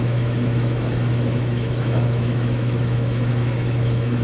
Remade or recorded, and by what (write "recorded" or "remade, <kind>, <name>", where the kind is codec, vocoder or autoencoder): remade, autoencoder, DAC-VAE